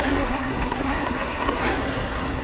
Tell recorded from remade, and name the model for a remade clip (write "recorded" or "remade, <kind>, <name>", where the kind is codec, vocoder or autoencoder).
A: remade, codec, SNAC